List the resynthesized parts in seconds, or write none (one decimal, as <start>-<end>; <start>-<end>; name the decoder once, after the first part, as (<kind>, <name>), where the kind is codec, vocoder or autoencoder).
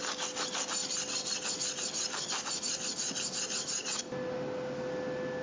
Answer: none